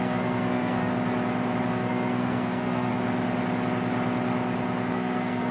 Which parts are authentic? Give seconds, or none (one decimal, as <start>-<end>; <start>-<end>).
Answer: 0.9-1.7; 2.9-4.9